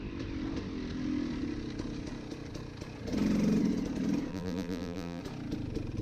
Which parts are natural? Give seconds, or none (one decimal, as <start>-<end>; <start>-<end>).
0.0-4.3; 5.2-6.0